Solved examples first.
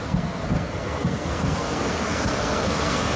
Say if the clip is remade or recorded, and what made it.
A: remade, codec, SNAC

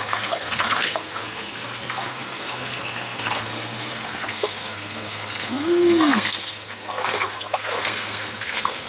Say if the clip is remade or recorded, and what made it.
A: remade, codec, SNAC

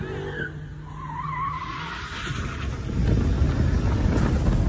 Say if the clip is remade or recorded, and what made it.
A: recorded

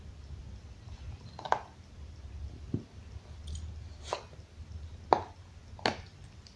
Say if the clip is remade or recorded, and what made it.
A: recorded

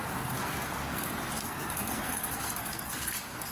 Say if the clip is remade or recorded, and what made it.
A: remade, codec, SNAC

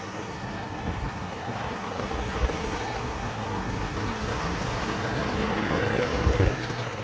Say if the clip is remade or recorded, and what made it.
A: remade, codec, SNAC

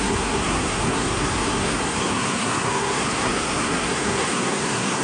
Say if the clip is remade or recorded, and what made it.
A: remade, codec, SNAC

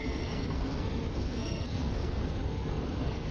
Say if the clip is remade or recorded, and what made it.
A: remade, codec, SNAC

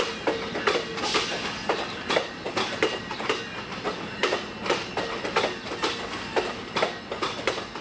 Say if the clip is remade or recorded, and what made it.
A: recorded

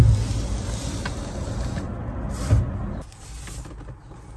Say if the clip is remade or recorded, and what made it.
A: recorded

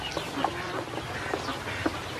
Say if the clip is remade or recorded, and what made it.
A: recorded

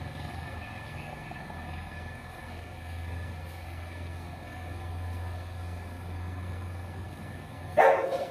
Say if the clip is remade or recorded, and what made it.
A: remade, codec, SNAC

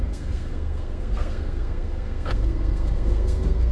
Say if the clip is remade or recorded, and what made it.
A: remade, codec, SNAC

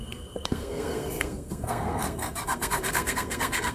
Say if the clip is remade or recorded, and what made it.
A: remade, codec, SNAC